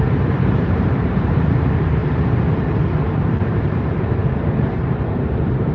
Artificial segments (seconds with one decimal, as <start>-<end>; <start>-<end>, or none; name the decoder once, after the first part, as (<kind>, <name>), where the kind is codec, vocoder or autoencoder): 0.0-2.0 (vocoder, BigVGAN v2); 3.0-5.7